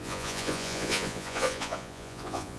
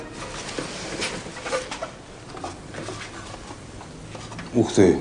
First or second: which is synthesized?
first